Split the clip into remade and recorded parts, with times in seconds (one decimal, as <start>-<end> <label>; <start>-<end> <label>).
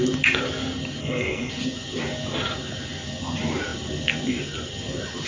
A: 0.0-1.0 recorded; 1.0-1.5 remade; 1.5-5.3 recorded